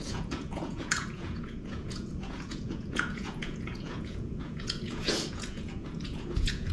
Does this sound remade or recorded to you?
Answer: remade